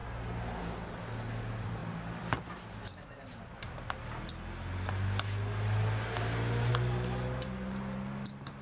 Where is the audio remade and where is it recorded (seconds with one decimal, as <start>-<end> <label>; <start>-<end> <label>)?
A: 0.0-8.6 recorded